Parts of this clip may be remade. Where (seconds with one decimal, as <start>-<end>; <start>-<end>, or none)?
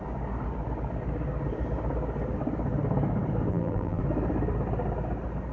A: 3.5-4.0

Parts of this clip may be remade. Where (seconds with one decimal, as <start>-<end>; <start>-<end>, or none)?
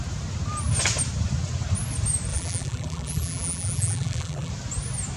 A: 2.3-4.5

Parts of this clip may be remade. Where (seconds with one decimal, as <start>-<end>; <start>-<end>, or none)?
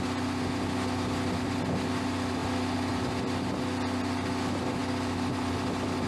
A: none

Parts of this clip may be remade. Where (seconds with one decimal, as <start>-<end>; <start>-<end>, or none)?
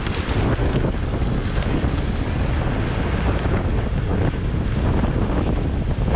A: 0.6-2.5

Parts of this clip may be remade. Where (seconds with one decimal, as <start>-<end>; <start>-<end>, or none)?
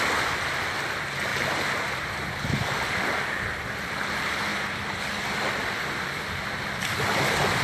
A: 1.3-3.0; 4.5-5.0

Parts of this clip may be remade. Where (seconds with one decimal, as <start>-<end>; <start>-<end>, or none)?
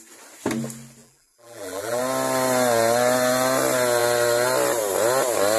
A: 1.0-2.0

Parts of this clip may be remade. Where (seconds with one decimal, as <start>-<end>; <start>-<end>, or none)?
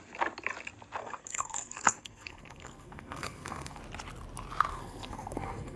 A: 1.0-3.8; 4.7-5.8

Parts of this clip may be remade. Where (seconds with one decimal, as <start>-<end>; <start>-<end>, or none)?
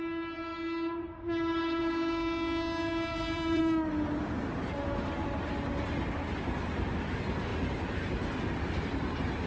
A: 3.1-3.6; 7.5-9.1